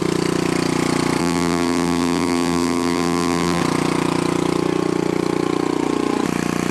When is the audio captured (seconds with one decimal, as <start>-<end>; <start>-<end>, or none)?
0.0-1.2; 3.6-6.7